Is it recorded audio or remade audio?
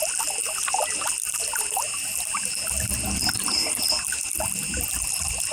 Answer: recorded